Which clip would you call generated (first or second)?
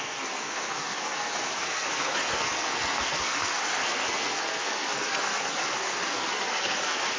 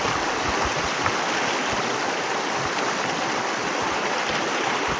first